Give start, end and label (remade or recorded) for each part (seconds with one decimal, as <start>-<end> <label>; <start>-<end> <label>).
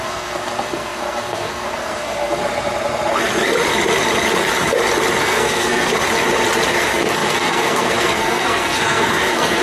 0.0-2.4 remade; 2.4-5.2 recorded; 5.2-5.9 remade; 5.9-6.7 recorded; 6.7-9.6 remade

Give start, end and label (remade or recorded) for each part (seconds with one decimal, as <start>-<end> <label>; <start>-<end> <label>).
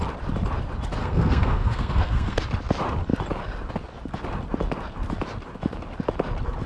0.0-1.0 recorded; 1.0-2.4 remade; 2.4-6.7 recorded